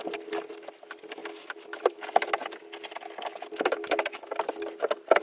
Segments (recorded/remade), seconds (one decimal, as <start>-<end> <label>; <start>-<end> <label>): 0.0-5.2 recorded